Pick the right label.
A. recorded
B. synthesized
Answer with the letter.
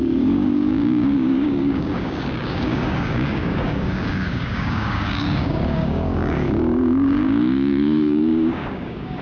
B